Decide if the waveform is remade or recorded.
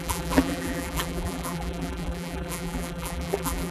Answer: remade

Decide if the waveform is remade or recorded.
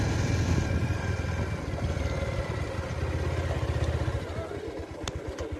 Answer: recorded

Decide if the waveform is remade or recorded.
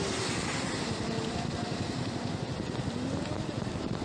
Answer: recorded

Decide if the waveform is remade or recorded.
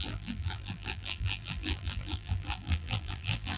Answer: remade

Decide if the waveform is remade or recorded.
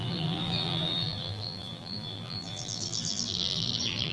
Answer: remade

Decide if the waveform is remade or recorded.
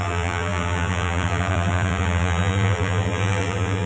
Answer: remade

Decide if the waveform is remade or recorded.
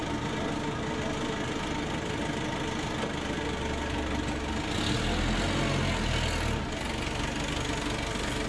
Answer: recorded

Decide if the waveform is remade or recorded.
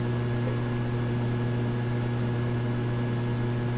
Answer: remade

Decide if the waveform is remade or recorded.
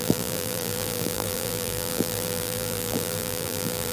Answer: remade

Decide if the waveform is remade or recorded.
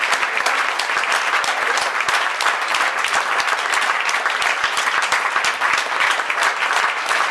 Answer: recorded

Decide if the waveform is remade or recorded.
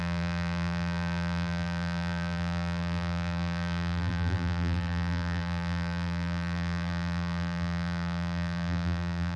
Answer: remade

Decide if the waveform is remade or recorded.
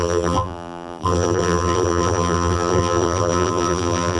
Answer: remade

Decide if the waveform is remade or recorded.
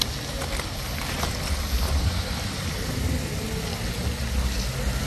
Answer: recorded